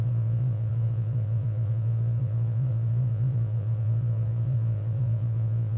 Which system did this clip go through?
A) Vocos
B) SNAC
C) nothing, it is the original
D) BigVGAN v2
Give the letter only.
A